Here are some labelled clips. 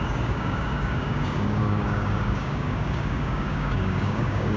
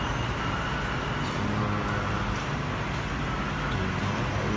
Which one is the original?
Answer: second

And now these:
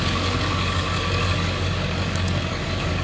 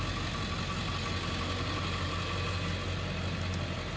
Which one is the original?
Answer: second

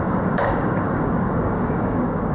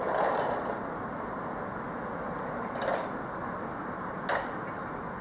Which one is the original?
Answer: second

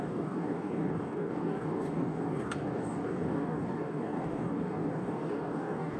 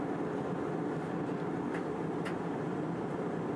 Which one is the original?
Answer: second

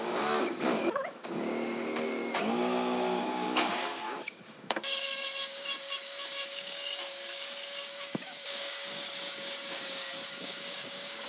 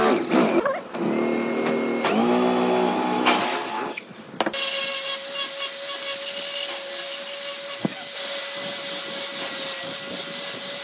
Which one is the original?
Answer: second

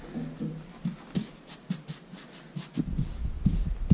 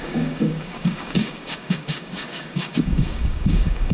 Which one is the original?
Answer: first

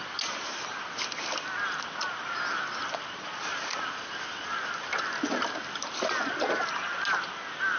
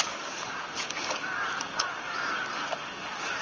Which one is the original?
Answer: first